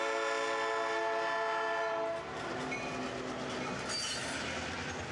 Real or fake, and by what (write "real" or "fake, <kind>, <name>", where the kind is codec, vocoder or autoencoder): real